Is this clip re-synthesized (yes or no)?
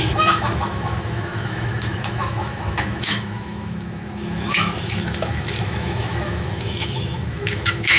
yes